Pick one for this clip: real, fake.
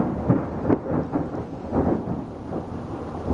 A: real